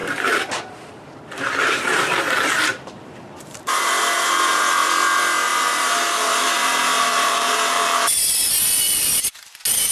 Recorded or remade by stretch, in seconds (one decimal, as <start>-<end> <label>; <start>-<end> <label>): 0.0-3.8 remade; 3.8-5.5 recorded; 5.5-8.2 remade; 8.2-9.9 recorded